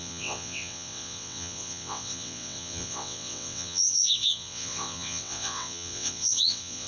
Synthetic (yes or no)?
yes